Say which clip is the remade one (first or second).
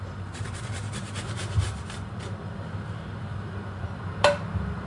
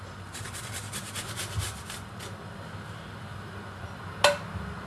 first